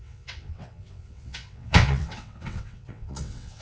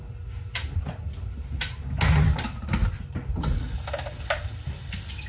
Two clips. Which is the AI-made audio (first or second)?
first